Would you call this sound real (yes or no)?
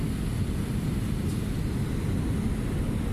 yes